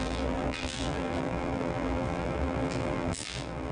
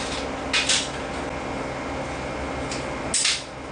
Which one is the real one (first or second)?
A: second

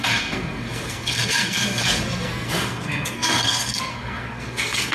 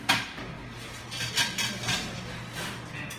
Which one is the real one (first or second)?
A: second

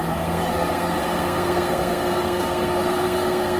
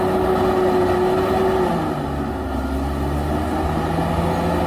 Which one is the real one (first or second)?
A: second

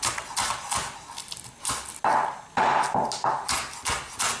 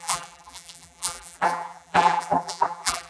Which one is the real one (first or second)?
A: first